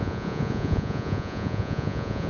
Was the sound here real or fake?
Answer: fake